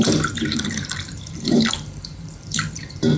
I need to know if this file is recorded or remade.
remade